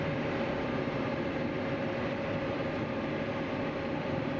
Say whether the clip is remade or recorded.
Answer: remade